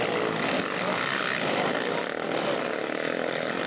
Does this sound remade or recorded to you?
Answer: recorded